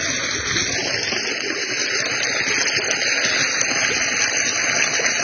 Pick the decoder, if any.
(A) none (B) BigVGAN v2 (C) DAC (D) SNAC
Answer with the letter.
A